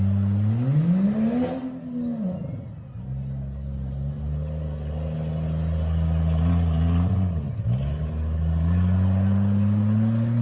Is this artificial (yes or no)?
no